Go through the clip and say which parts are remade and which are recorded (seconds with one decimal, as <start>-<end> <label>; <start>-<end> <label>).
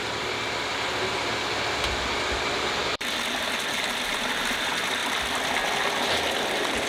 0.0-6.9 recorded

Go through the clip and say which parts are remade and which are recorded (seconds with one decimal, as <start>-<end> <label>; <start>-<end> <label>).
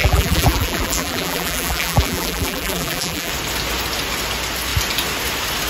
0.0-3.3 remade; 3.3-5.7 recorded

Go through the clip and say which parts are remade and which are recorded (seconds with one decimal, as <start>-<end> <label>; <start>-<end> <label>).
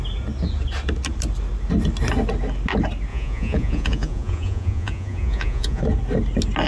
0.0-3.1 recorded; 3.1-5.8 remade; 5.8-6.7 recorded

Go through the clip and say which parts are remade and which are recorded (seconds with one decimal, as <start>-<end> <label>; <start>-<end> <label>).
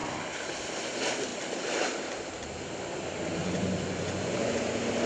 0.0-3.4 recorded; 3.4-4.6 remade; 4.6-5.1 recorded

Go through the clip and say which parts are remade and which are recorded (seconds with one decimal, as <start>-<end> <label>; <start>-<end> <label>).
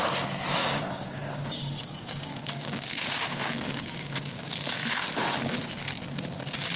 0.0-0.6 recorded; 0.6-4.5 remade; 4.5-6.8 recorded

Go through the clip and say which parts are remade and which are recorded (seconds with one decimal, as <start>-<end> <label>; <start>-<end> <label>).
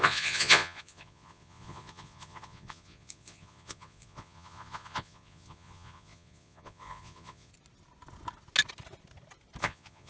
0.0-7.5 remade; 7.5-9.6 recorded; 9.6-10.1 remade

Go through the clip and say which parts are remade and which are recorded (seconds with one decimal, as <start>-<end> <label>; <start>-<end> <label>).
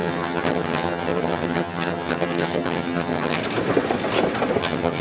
0.0-3.4 remade; 3.4-4.6 recorded; 4.6-5.0 remade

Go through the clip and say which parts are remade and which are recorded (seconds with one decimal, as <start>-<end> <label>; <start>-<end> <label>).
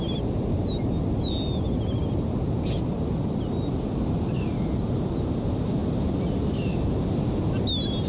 0.0-8.1 recorded